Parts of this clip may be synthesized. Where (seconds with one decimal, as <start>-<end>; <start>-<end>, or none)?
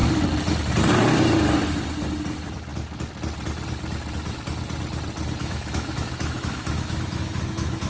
5.4-7.9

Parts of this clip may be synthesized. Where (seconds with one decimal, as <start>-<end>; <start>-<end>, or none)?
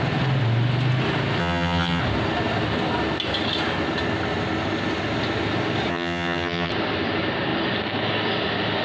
1.4-2.0; 5.9-6.7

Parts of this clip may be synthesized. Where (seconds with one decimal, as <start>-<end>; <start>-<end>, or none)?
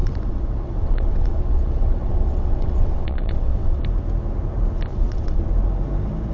0.0-3.8; 4.9-5.4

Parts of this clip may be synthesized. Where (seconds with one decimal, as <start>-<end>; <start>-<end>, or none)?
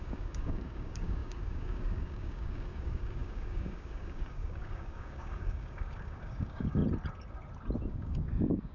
0.0-6.8; 7.9-8.7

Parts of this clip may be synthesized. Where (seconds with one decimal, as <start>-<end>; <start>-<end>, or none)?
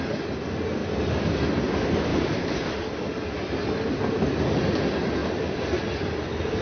0.8-1.5; 2.1-3.4; 5.2-5.8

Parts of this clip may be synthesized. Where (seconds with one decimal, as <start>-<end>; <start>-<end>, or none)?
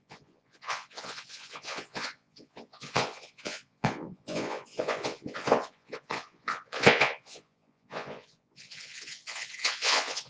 0.0-10.3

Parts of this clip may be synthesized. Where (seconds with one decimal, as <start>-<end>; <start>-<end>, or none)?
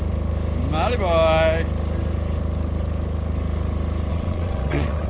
4.1-5.1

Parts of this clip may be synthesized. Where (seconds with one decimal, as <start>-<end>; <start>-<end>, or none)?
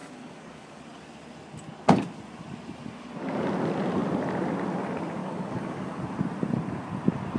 0.0-0.8; 5.2-6.0